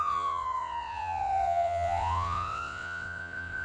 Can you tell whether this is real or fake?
fake